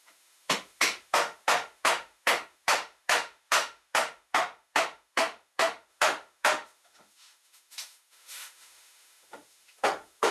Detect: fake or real fake